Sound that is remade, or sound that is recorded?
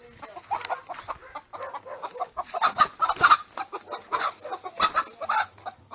recorded